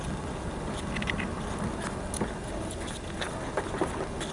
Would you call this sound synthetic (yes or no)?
no